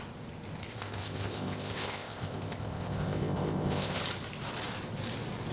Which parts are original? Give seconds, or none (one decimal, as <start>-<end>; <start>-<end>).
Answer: 0.0-0.7; 4.0-5.5